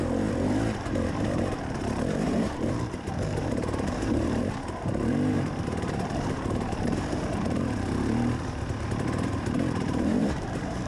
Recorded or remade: remade